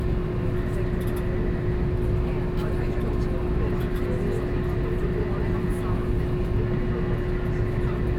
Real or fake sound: real